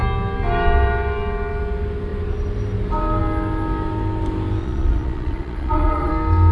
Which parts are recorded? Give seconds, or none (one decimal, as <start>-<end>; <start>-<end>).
0.0-4.6; 6.1-6.5